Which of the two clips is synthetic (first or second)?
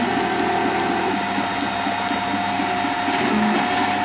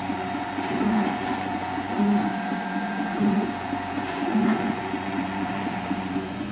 second